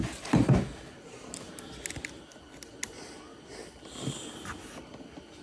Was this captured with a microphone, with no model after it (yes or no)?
yes